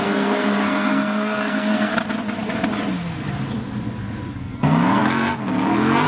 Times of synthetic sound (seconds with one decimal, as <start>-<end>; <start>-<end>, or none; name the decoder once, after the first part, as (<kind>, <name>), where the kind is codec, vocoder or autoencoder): 0.0-1.9 (codec, SNAC); 4.4-6.1